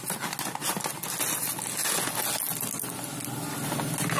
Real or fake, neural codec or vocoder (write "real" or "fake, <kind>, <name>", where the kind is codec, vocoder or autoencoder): real